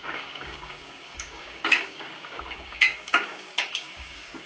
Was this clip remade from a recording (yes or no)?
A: yes